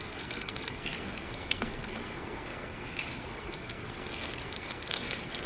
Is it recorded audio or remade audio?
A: remade